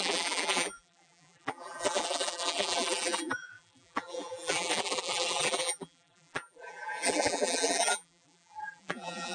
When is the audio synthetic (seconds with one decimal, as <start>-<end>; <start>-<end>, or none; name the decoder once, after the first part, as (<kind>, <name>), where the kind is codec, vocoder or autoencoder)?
0.0-9.3 (vocoder, BigVGAN v2)